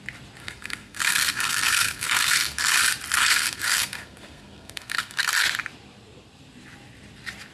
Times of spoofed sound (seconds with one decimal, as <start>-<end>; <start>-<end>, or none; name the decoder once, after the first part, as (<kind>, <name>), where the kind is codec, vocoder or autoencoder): 0.4-2.6 (codec, SNAC); 3.2-5.3